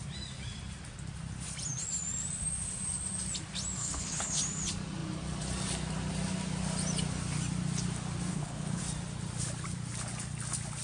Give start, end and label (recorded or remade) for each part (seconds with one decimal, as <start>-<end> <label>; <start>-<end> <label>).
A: 0.0-3.8 recorded; 3.8-4.4 remade; 4.4-8.3 recorded; 8.3-8.8 remade; 8.8-10.8 recorded